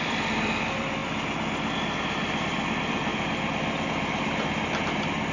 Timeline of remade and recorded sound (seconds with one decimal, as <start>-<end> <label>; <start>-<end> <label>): 0.0-1.0 remade; 1.0-2.0 recorded; 2.0-5.3 remade